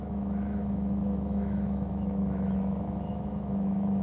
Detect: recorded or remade remade